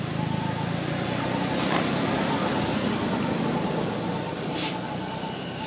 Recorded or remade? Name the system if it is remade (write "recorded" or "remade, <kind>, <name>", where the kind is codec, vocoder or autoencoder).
recorded